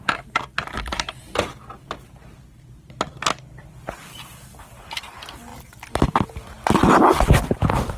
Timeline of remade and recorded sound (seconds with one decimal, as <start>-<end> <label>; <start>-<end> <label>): 0.0-8.0 recorded